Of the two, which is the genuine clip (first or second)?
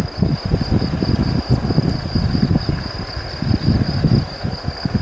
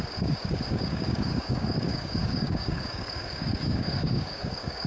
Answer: first